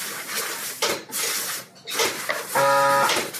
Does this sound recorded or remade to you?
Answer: recorded